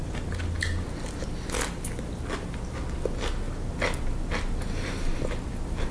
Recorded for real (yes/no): yes